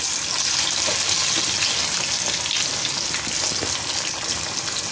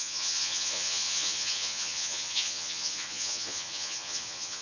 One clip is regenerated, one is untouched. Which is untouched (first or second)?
first